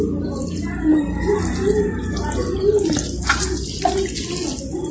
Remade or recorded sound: recorded